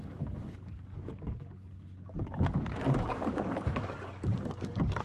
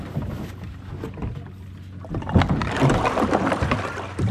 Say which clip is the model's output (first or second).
first